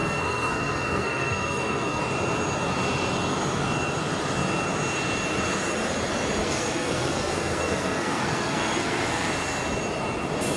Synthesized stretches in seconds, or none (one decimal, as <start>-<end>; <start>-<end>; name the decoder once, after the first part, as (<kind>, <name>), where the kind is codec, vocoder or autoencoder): 0.0-2.0 (codec, SNAC); 6.4-9.3